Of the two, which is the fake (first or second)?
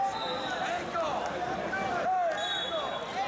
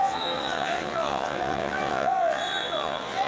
second